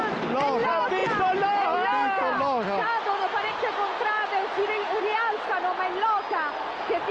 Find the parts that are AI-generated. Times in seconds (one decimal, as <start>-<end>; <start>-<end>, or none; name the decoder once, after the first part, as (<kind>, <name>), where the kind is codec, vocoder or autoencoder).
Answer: none